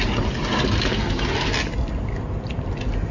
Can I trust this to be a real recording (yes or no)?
yes